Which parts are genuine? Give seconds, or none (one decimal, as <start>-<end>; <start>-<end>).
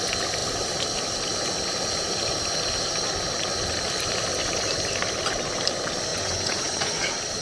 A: 0.0-6.1; 7.0-7.4